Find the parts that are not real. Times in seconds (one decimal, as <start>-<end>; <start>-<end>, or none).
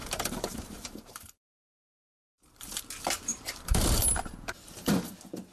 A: 0.0-2.8; 3.3-5.1